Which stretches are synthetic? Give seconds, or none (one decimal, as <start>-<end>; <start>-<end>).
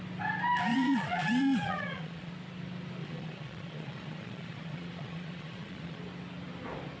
0.7-2.3; 3.0-6.0